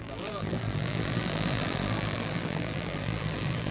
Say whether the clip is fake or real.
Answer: fake